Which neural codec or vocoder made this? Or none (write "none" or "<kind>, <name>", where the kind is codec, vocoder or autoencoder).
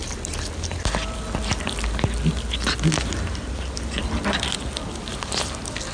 none